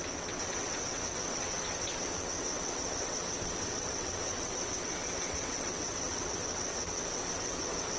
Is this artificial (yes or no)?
yes